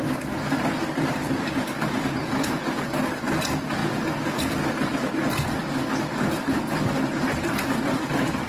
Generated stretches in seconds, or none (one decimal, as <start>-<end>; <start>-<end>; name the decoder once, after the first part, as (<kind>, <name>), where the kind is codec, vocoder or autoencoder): none